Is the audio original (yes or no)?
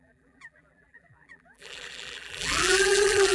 no